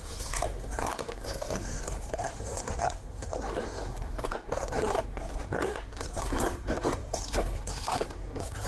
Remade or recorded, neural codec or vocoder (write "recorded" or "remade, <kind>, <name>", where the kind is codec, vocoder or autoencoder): remade, codec, SNAC